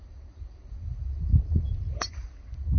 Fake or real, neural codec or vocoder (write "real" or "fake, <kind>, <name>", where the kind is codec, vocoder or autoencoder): real